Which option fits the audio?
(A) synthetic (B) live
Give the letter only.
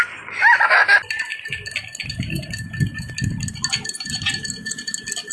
B